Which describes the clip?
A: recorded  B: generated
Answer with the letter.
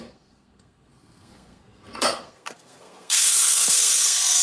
B